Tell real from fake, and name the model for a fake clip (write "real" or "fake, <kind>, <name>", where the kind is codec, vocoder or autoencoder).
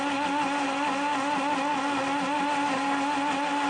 real